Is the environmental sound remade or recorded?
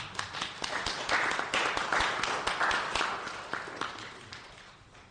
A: recorded